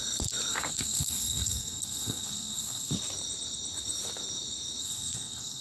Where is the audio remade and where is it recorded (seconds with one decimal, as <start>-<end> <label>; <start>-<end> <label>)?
0.0-0.5 recorded; 0.5-2.9 remade; 2.9-4.8 recorded; 4.8-5.6 remade